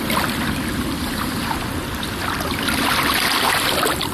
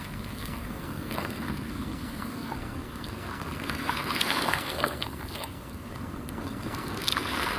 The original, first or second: first